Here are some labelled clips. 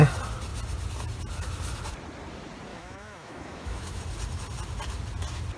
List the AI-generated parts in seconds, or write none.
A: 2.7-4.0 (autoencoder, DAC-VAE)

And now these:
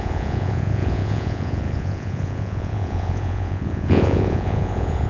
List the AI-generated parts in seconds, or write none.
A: 0.0-5.1 (vocoder, Vocos)

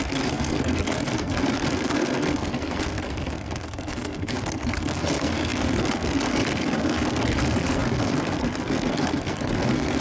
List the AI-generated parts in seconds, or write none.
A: 0.0-10.0 (codec, SNAC)